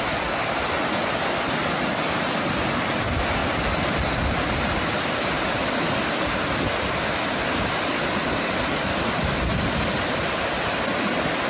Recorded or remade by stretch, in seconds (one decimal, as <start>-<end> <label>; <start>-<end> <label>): 0.0-11.5 recorded